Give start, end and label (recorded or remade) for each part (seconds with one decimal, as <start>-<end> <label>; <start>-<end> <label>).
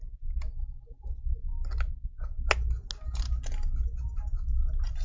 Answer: 0.0-5.0 recorded